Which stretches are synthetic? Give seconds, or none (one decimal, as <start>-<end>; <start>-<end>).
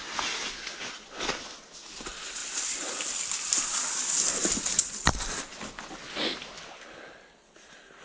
none